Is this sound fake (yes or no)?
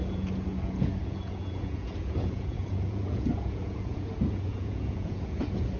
yes